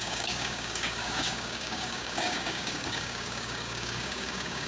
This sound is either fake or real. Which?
fake